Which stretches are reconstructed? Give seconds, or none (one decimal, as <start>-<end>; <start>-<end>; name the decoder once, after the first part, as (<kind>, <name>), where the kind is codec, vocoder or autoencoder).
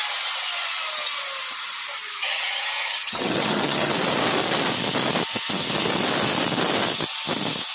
2.2-3.9 (vocoder, HiFi-GAN)